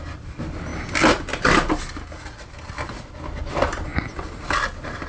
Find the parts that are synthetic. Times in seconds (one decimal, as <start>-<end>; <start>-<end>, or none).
none